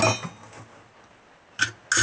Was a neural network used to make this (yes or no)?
no